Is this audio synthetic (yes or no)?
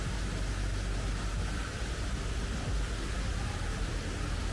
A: no